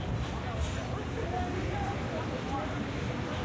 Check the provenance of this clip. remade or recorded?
recorded